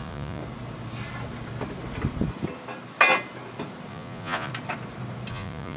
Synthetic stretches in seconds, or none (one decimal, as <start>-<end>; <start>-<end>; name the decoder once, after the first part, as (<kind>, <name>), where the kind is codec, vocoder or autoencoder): 0.0-0.4 (vocoder, Vocos); 3.9-4.5; 5.3-5.8